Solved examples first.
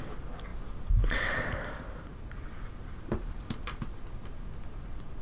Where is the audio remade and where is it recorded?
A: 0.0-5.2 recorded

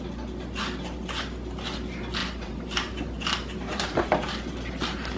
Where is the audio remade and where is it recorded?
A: 0.0-2.2 recorded; 2.2-4.1 remade; 4.1-5.2 recorded

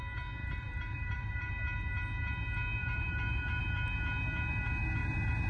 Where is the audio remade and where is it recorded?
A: 0.0-0.4 recorded; 0.4-1.5 remade; 1.5-2.8 recorded; 2.8-3.6 remade; 3.6-5.0 recorded; 5.0-5.5 remade